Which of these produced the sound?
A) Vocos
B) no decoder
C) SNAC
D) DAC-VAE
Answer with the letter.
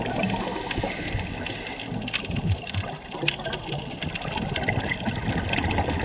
B